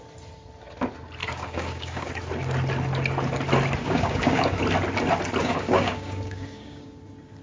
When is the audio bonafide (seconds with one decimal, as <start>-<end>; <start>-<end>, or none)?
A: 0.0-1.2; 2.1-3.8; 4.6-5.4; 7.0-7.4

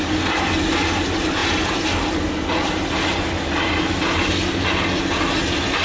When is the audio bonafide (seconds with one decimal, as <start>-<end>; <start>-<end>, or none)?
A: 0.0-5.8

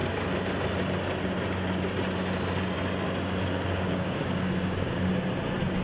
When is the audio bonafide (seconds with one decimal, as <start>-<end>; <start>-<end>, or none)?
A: 0.0-3.4; 5.1-5.8

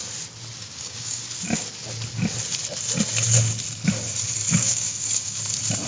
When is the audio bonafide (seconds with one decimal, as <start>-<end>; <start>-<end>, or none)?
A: 0.0-0.6; 1.2-4.6; 5.4-5.9

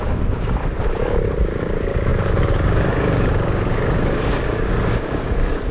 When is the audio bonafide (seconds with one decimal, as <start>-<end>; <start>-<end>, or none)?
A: none

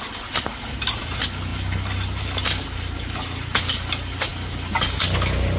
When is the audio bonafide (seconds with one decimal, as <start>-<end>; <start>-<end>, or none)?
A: 0.0-5.6